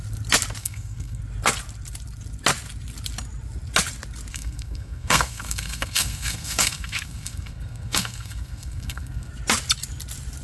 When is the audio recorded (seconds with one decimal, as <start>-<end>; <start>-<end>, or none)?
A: 0.0-0.6; 1.2-4.3; 9.3-10.4